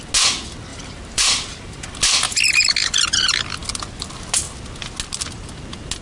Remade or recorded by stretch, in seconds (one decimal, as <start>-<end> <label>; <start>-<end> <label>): 0.0-0.7 recorded; 0.7-1.9 remade; 1.9-6.0 recorded

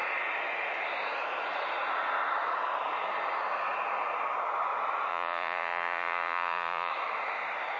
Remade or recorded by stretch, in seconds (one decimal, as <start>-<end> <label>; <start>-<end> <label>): 0.0-5.1 recorded; 5.1-6.9 remade; 6.9-7.8 recorded

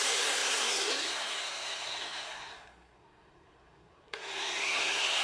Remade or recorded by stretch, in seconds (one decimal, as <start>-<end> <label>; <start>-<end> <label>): 0.0-5.2 remade

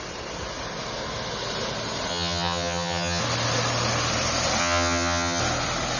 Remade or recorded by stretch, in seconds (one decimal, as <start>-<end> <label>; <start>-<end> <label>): 0.0-2.1 recorded; 2.1-3.2 remade; 3.2-4.6 recorded; 4.6-5.4 remade; 5.4-6.0 recorded

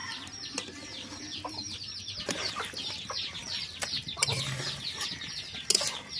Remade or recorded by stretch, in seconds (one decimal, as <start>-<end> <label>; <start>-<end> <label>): 0.0-2.5 remade; 2.5-3.4 recorded; 3.4-5.2 remade; 5.2-6.2 recorded

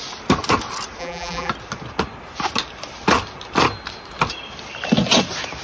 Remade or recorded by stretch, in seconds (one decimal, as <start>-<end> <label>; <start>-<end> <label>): 0.0-1.0 recorded; 1.0-1.5 remade; 1.5-5.6 recorded

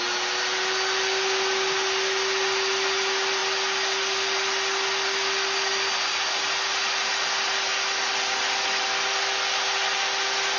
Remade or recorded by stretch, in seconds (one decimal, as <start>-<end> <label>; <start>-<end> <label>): 0.0-10.6 recorded

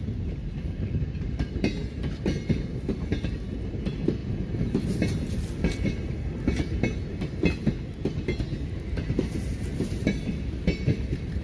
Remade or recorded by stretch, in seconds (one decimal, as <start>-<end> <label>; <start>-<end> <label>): 0.0-1.8 remade; 1.8-3.7 recorded; 3.7-4.2 remade; 4.2-8.7 recorded; 8.7-11.4 remade